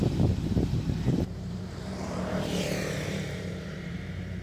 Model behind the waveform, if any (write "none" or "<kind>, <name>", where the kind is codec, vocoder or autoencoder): vocoder, BigVGAN v2